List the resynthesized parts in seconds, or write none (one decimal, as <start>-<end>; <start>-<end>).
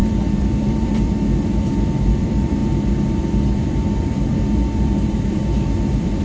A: 0.0-2.6; 3.2-6.2